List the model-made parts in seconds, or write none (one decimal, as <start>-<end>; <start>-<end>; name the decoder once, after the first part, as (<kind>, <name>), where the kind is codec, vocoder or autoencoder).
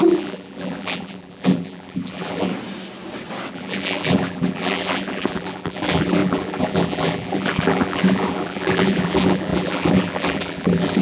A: 0.0-2.5 (vocoder, BigVGAN v2); 3.5-11.0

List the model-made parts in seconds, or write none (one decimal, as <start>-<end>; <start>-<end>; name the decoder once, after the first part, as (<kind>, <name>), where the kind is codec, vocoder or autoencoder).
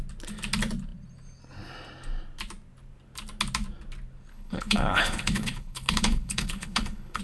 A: 4.3-7.2 (codec, HILCodec)